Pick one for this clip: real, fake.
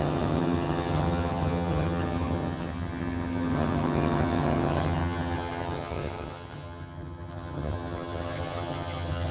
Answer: fake